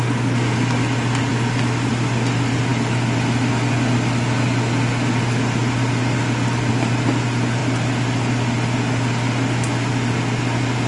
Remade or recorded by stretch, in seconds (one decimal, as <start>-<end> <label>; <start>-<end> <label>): 0.0-10.9 recorded